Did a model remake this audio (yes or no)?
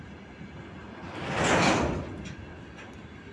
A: no